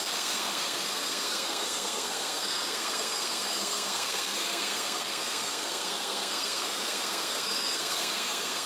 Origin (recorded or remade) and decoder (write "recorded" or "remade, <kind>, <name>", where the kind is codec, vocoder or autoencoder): remade, codec, SNAC